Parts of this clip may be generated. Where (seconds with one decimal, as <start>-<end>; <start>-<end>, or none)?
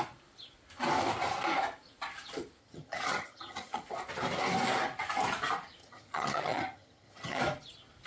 2.6-3.8; 5.8-7.4